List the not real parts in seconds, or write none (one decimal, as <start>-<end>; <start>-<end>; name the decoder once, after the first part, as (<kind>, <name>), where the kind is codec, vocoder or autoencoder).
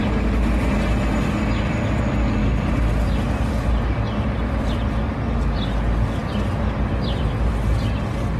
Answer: none